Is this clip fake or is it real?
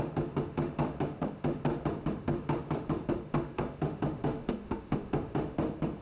fake